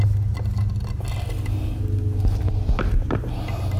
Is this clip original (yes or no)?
yes